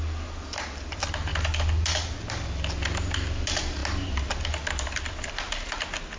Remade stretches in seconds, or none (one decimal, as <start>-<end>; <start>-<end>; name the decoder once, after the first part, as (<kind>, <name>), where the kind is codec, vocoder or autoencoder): none